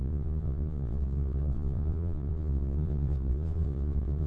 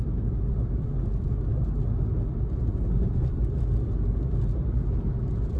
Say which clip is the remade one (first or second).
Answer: first